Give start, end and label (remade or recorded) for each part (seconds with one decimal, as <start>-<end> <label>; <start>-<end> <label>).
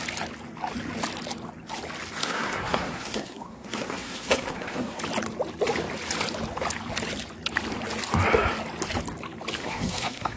0.0-2.2 recorded; 2.2-5.0 remade; 5.0-9.6 recorded; 9.6-10.4 remade